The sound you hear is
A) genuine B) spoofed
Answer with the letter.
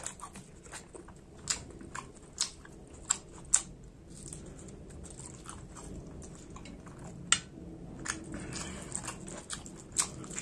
A